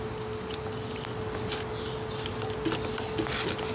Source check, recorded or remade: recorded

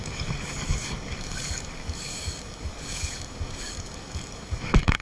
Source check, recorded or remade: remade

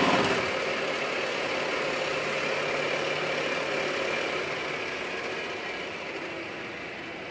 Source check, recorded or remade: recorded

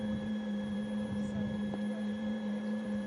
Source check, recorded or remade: remade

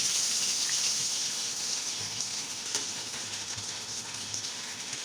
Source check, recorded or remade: remade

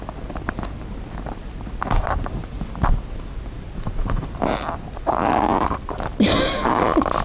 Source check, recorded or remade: recorded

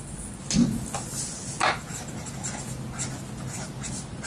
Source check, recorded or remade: recorded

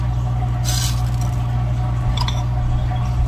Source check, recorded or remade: recorded